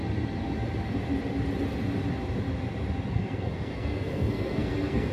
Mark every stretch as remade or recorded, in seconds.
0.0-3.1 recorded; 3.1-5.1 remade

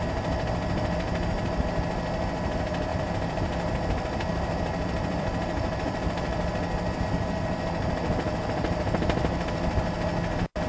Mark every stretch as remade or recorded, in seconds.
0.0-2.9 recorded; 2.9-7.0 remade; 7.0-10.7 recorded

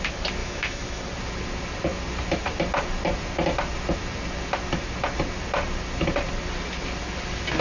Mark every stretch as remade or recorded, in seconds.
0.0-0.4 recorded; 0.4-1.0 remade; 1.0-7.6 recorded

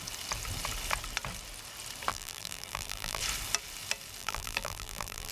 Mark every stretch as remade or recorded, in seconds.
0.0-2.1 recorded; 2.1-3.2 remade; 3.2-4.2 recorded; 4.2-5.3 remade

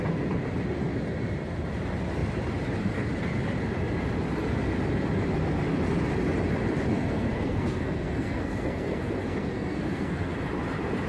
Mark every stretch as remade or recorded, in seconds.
0.0-6.9 recorded; 6.9-10.3 remade; 10.3-11.1 recorded

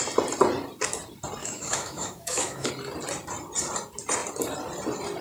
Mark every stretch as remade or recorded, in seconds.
0.0-1.4 recorded; 1.4-2.7 remade; 2.7-5.2 recorded